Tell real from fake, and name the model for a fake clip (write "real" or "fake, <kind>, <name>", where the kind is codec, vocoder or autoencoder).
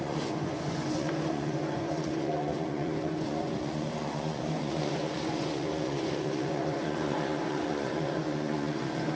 fake, vocoder, Vocos